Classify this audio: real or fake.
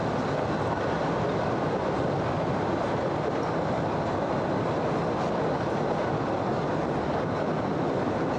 real